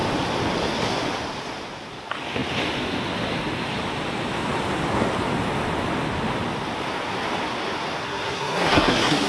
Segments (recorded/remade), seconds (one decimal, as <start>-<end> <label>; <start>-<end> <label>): 0.0-8.0 recorded; 8.0-9.3 remade